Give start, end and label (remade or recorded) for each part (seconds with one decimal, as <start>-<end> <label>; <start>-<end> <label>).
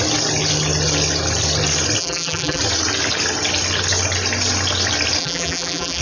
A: 0.0-2.0 recorded; 2.0-2.6 remade; 2.6-5.2 recorded; 5.2-6.0 remade